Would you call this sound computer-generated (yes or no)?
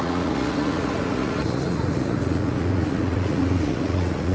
yes